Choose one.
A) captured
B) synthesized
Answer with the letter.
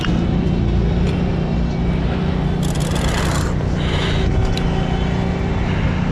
A